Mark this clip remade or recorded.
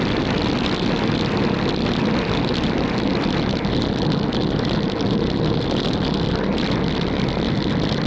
recorded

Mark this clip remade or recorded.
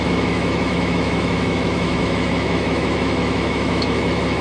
remade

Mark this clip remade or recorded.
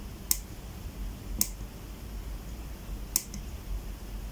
recorded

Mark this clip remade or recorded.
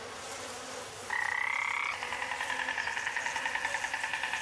recorded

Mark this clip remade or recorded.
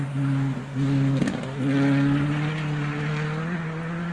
recorded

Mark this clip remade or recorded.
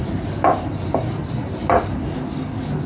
recorded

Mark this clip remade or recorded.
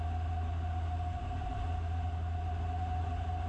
recorded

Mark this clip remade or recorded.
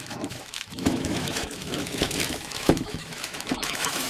remade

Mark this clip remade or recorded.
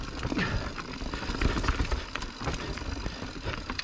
recorded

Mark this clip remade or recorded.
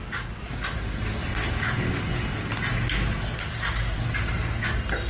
recorded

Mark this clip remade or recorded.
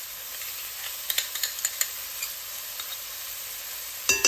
recorded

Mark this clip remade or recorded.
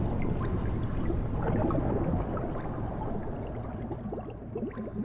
recorded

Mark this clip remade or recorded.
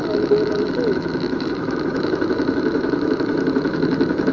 remade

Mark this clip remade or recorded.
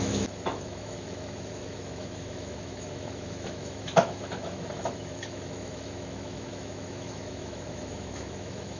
remade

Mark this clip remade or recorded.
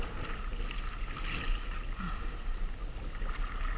recorded